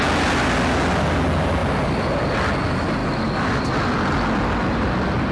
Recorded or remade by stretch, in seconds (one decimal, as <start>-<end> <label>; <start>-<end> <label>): 0.0-5.3 recorded